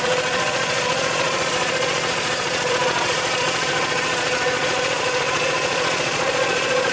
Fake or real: fake